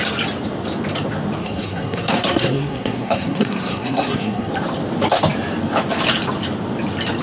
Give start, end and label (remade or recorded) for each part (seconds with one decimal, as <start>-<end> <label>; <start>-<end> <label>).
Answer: 0.0-1.4 recorded; 1.4-4.5 remade; 4.5-7.2 recorded